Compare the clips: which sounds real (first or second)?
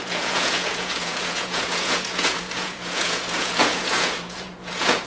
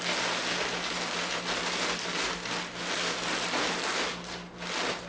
second